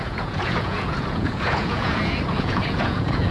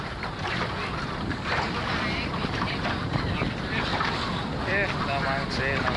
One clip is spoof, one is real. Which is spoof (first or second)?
first